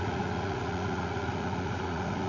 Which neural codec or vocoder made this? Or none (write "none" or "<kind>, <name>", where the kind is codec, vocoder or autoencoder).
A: vocoder, Vocos